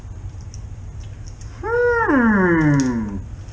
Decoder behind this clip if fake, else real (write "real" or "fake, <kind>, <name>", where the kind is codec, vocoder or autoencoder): real